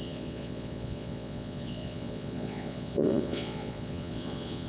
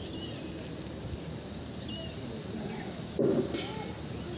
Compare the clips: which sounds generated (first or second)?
first